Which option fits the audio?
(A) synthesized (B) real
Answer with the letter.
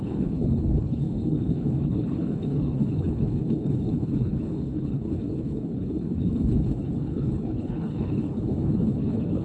A